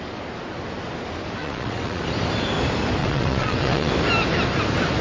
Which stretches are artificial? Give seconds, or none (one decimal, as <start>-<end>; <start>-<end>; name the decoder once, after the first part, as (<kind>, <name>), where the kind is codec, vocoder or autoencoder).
1.4-2.0 (vocoder, WaveNeXt); 3.0-3.9